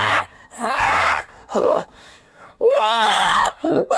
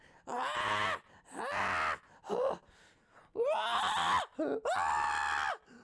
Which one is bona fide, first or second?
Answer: second